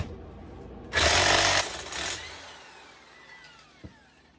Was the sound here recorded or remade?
recorded